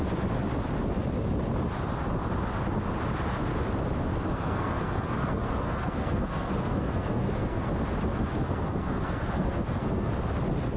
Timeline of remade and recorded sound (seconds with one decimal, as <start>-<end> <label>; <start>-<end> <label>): 0.0-4.3 recorded; 4.3-7.7 remade; 7.7-8.1 recorded; 8.1-10.1 remade; 10.1-10.8 recorded